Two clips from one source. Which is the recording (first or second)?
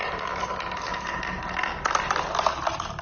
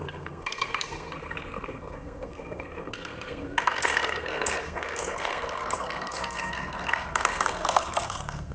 first